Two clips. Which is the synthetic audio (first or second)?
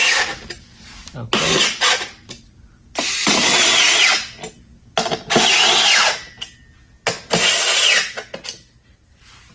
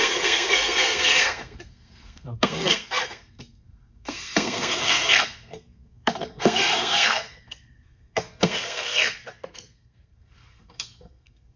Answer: second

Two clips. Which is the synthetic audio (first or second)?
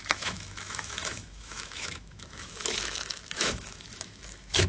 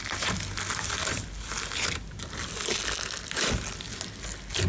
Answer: first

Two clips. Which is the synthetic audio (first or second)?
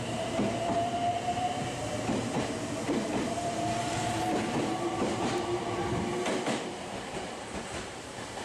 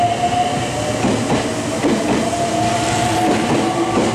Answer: first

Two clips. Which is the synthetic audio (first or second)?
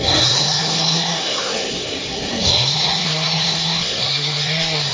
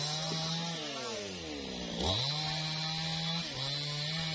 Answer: first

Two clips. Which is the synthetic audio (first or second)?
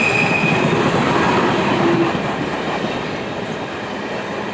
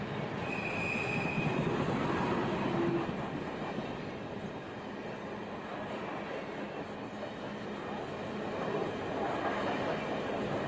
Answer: first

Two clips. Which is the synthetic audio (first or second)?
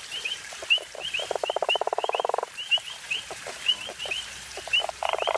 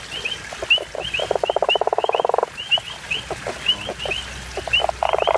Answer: first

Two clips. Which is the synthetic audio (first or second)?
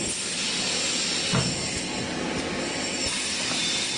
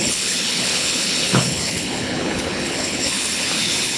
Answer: second